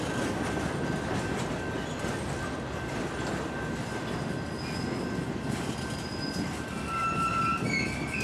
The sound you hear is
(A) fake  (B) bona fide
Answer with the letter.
B